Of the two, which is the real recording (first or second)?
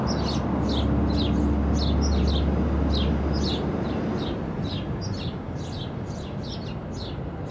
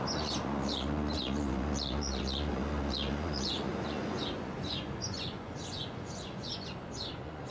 first